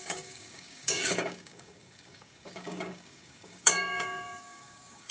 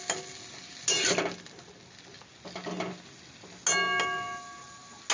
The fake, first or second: first